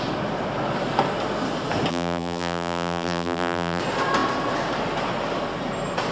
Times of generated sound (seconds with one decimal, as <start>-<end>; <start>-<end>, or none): 1.9-3.8